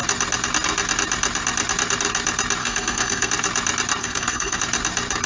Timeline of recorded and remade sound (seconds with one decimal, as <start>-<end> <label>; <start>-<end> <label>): 0.0-2.6 recorded; 2.6-3.3 remade; 3.3-4.0 recorded; 4.0-4.6 remade; 4.6-5.3 recorded